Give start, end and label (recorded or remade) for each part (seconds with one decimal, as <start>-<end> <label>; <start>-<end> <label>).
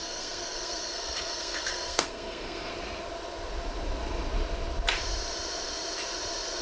0.0-2.7 remade; 2.7-6.6 recorded